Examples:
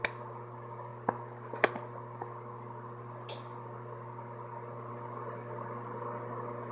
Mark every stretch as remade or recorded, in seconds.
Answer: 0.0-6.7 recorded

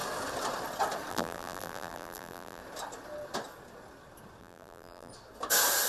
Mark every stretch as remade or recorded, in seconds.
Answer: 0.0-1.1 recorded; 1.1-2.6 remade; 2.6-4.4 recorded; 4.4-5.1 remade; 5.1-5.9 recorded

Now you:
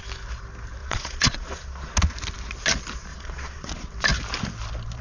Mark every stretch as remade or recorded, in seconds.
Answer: 0.0-0.8 recorded; 0.8-1.9 remade; 1.9-3.1 recorded; 3.1-3.9 remade; 3.9-5.0 recorded